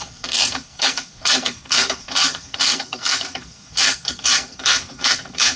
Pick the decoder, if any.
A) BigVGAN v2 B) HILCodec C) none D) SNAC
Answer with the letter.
D